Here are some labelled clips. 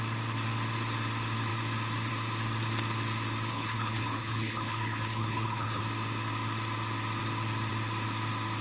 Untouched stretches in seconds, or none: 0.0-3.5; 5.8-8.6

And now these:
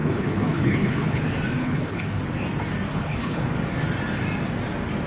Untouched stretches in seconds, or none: 1.2-1.6; 2.2-2.9; 3.5-5.1

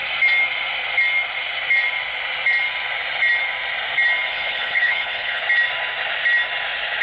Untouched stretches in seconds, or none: 0.0-4.3; 5.4-7.0

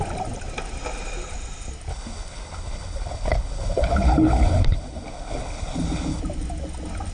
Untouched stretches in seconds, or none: 0.0-1.9; 6.2-7.1